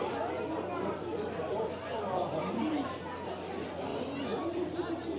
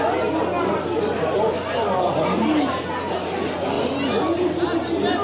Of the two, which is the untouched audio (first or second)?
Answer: second